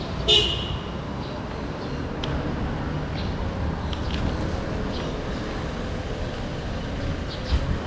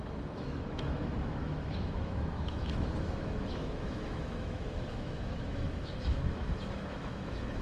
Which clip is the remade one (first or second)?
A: second